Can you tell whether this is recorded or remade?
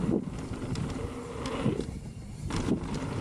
recorded